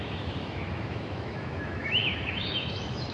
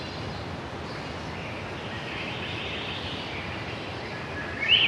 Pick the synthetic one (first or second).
first